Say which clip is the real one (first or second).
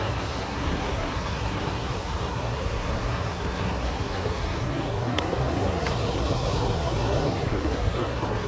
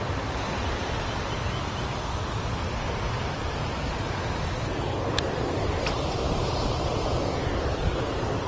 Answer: second